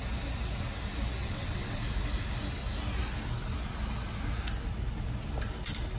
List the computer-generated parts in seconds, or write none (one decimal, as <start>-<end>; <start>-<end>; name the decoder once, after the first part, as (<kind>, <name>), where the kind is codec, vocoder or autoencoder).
1.2-1.8 (vocoder, WaveNeXt)

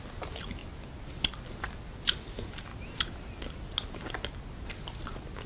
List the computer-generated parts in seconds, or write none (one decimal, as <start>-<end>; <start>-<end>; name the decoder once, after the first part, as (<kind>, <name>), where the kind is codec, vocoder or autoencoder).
none

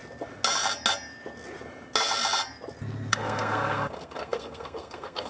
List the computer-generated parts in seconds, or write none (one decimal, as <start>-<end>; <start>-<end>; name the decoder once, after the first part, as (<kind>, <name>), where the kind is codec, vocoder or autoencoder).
3.1-5.3 (codec, SNAC)

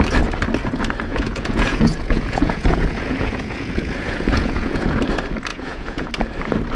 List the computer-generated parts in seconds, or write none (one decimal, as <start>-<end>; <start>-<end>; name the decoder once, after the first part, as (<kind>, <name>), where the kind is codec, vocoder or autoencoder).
1.1-5.0 (vocoder, Vocos); 5.5-6.1